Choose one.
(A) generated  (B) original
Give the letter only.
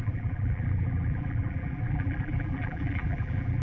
A